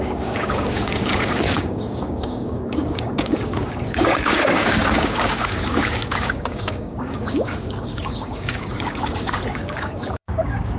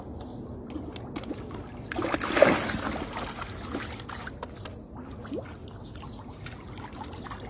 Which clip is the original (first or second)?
second